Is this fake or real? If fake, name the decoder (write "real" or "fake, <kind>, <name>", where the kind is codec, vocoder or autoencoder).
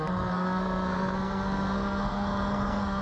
fake, codec, SNAC